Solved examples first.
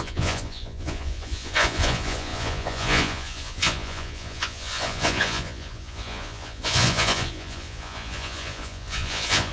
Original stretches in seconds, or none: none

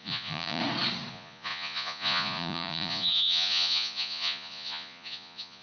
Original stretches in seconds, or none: 0.6-1.1

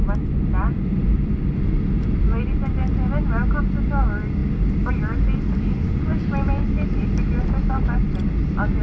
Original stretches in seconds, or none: 0.0-8.8

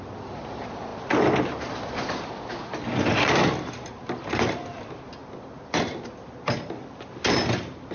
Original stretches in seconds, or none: 0.0-7.9

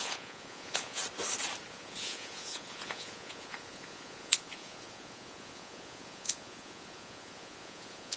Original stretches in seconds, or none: 1.0-1.7

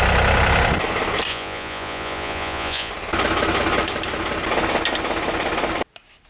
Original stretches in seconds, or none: 0.0-1.3; 2.9-6.3